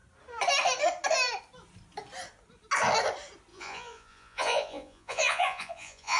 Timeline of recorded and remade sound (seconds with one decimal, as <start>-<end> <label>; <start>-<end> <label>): 0.0-3.5 recorded; 3.5-6.2 remade